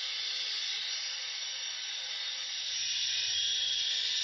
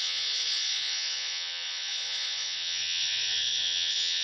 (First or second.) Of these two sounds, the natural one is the first